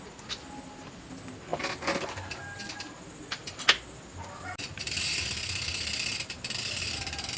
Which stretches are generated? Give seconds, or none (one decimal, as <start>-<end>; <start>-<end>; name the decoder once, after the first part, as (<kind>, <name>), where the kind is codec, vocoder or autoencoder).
none